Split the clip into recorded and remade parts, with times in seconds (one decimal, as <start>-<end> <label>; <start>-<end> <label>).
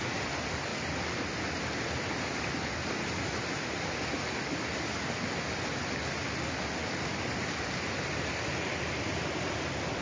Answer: 0.0-10.0 recorded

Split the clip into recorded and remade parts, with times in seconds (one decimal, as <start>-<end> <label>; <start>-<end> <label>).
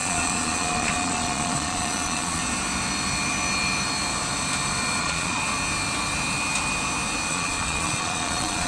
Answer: 0.0-2.4 remade; 2.4-5.0 recorded; 5.0-5.4 remade; 5.4-7.3 recorded; 7.3-8.7 remade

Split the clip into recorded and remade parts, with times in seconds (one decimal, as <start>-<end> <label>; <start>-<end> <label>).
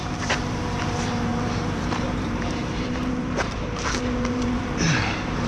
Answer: 0.0-5.5 remade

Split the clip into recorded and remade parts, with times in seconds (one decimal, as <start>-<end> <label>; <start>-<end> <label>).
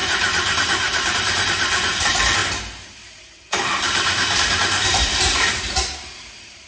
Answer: 0.0-2.4 remade; 2.4-3.0 recorded; 3.0-6.7 remade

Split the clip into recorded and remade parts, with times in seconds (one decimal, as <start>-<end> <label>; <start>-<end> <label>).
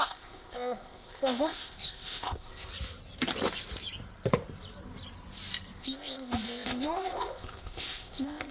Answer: 0.0-2.7 remade; 2.7-5.8 recorded; 5.8-8.5 remade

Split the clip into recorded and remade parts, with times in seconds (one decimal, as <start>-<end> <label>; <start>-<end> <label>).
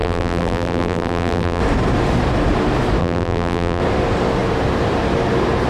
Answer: 0.0-1.6 remade; 1.6-3.0 recorded; 3.0-3.8 remade; 3.8-5.7 recorded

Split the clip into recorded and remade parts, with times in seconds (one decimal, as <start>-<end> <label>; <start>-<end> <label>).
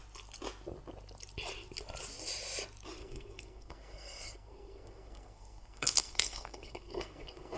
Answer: 0.0-3.0 recorded; 3.0-7.6 remade